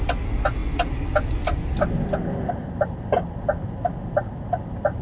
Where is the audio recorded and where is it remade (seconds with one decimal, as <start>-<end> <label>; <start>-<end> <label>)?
0.0-5.0 recorded